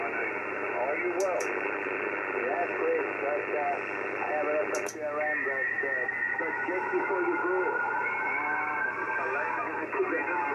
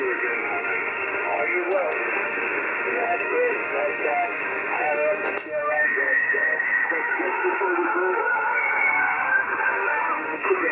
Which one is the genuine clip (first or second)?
first